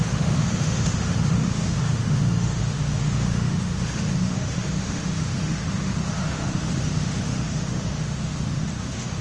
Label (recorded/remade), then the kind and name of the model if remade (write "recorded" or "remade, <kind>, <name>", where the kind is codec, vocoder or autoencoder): remade, autoencoder, DAC-VAE